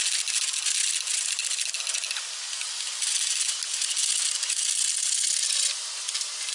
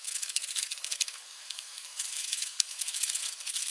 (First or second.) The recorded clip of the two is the first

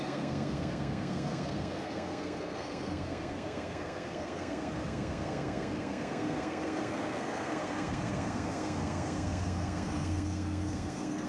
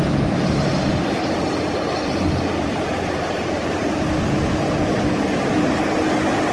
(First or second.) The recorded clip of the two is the second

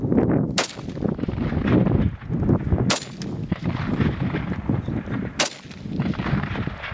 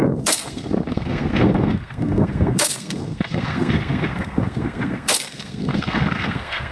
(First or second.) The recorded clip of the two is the first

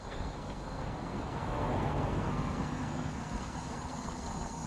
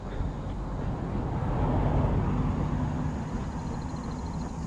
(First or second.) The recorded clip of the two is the second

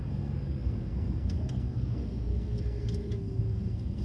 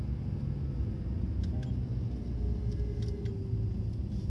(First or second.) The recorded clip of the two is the second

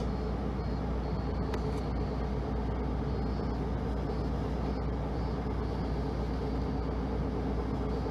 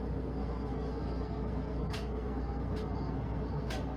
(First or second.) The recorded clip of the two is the first